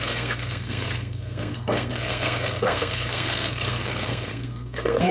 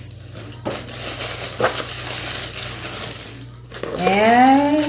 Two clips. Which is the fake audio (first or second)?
first